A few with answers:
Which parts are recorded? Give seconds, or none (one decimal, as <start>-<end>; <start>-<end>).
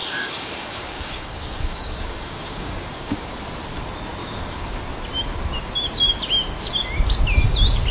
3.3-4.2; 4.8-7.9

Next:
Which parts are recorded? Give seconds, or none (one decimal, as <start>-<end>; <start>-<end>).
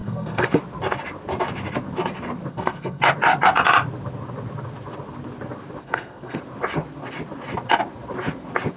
0.6-2.5; 3.0-5.8; 6.4-8.8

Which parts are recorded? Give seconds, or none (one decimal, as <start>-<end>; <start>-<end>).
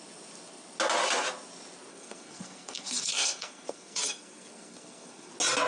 0.0-1.9; 5.3-5.7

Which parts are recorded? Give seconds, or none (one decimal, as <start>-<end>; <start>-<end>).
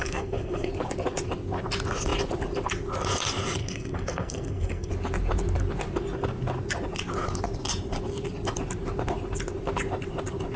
0.7-3.6; 4.9-10.6